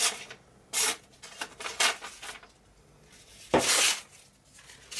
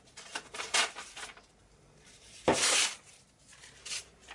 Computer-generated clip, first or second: second